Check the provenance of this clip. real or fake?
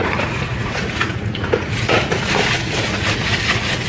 fake